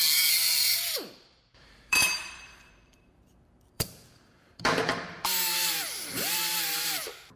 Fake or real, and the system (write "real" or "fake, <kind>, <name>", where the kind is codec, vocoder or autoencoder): fake, vocoder, BigVGAN v2